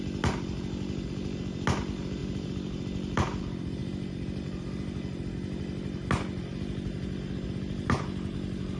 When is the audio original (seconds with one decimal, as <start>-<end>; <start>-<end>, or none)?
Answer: 0.0-2.2; 3.4-8.8

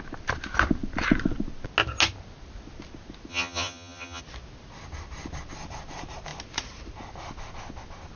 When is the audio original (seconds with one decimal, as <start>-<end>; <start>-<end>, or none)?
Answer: 0.0-3.3; 4.2-8.2

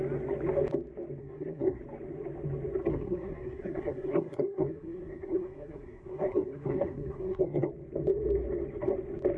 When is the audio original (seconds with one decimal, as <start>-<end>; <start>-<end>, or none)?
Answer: 0.0-1.2; 1.8-2.9; 7.7-9.4

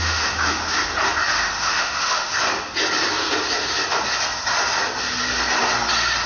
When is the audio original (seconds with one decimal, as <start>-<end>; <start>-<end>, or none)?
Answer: 0.6-1.4; 2.3-6.3